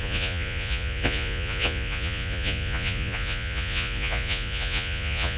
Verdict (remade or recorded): remade